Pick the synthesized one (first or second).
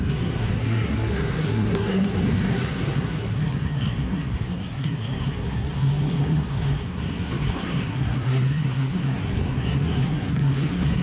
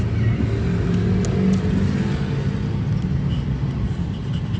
first